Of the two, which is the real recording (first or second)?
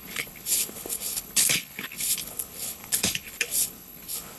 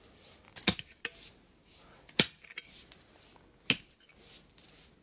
second